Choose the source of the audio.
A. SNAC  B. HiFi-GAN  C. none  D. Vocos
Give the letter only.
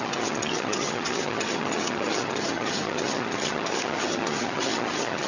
B